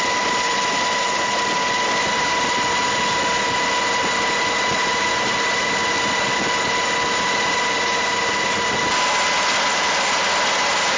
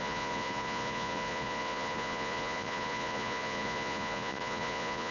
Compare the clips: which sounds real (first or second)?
first